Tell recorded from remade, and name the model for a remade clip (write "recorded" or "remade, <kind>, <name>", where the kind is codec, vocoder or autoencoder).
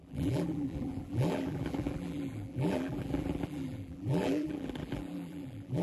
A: remade, vocoder, BigVGAN v2